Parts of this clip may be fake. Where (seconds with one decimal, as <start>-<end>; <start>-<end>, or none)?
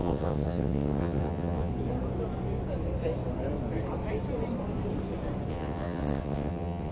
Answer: 0.0-1.7; 5.5-6.9